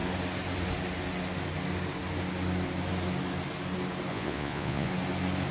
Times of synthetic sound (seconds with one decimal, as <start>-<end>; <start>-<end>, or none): 4.1-4.9